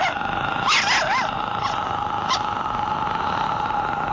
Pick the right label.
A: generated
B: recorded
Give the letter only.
B